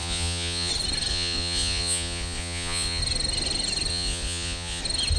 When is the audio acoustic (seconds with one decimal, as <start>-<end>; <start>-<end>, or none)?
0.7-1.1; 3.0-3.9; 4.8-5.2